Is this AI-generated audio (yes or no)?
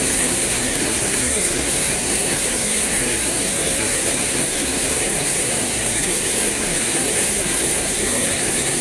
yes